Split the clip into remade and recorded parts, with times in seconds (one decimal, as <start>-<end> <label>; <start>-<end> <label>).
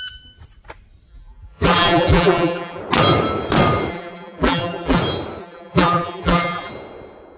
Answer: 0.0-1.1 recorded; 1.1-2.8 remade; 2.8-3.9 recorded; 3.9-5.0 remade; 5.0-5.4 recorded; 5.4-6.7 remade; 6.7-7.4 recorded